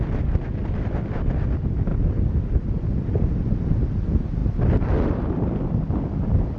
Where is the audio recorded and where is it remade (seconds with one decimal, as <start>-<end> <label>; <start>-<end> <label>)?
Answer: 0.0-1.9 recorded; 1.9-2.4 remade; 2.4-6.6 recorded